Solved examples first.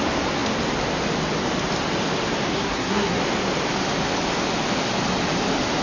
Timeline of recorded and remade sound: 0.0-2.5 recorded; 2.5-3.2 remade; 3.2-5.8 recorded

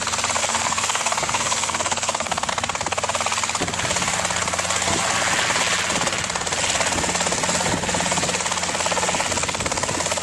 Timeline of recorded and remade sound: 0.0-0.4 recorded; 0.4-2.5 remade; 2.5-10.2 recorded

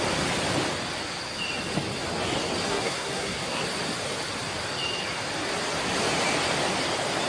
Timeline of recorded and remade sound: 0.0-2.7 recorded; 2.7-3.6 remade; 3.6-7.3 recorded

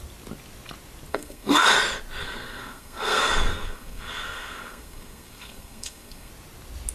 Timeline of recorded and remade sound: 0.0-1.1 recorded; 1.1-1.7 remade; 1.7-2.2 recorded; 2.2-6.3 remade; 6.3-6.9 recorded